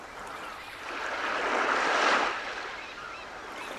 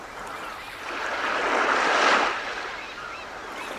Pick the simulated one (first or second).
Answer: first